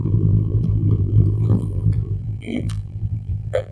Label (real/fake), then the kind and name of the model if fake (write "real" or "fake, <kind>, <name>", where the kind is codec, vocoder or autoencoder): fake, vocoder, BigVGAN v2